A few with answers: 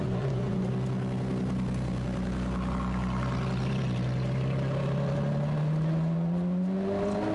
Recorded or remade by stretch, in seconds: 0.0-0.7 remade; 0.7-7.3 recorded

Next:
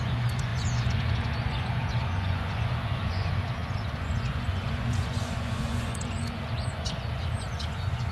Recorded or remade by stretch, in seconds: 0.0-8.1 remade

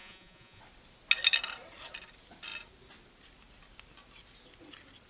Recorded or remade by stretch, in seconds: 0.0-0.6 remade; 0.6-5.1 recorded

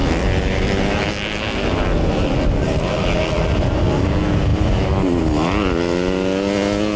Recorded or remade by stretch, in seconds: 0.0-7.0 recorded

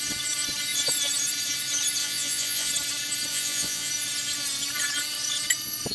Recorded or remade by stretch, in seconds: 0.0-2.0 recorded; 2.0-2.7 remade; 2.7-3.3 recorded; 3.3-3.9 remade; 3.9-5.9 recorded